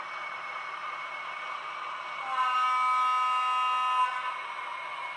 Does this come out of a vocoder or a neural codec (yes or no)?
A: no